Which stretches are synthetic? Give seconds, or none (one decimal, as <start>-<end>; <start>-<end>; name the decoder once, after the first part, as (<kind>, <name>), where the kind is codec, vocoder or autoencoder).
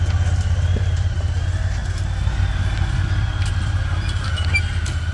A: none